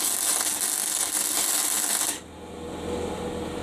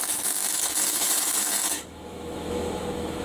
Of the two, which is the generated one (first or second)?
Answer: second